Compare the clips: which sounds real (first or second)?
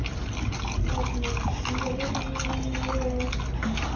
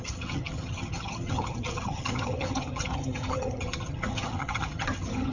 first